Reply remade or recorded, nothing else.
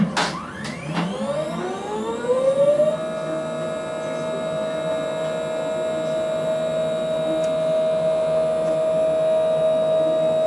recorded